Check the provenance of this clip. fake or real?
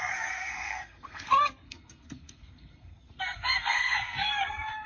fake